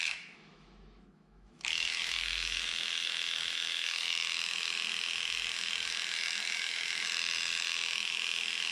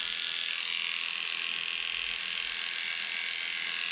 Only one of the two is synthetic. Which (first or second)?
first